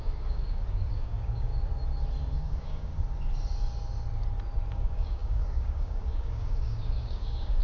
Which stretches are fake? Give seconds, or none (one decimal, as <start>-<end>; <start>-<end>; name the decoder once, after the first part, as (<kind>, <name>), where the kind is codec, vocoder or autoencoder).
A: 0.0-1.5 (codec, DAC); 2.3-2.9; 4.7-7.6